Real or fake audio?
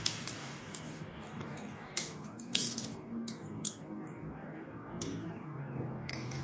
fake